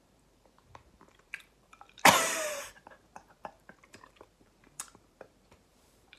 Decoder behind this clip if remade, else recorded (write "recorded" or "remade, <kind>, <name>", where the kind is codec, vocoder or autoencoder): remade, vocoder, BigVGAN v2